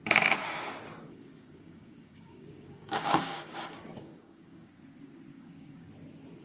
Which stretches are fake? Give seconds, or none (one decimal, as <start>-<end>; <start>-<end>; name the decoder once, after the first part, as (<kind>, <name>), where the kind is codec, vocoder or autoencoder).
1.0-4.8 (codec, DAC); 5.3-5.9